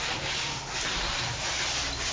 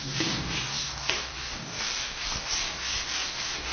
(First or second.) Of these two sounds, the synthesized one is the second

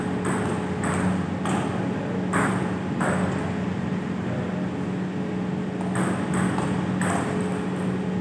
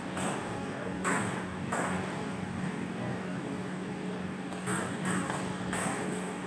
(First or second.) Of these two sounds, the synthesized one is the second